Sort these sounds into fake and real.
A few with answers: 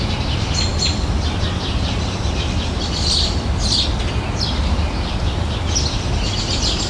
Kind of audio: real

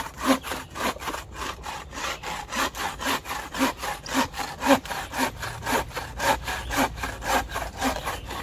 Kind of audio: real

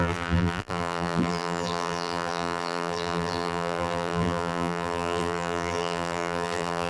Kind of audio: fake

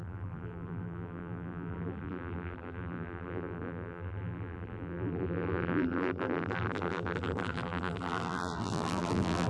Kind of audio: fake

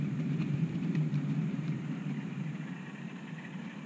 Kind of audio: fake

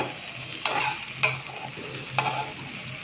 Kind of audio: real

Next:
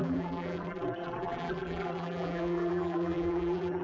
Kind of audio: fake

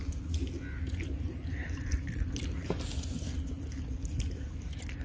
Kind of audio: real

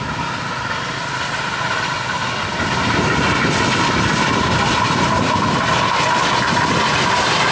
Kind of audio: real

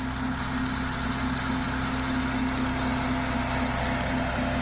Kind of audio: real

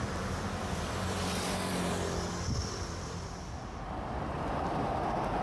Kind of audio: fake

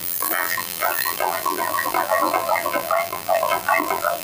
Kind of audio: fake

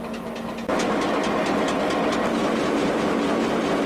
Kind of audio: real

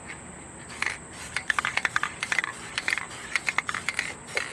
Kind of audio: real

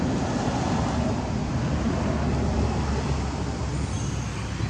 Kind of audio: real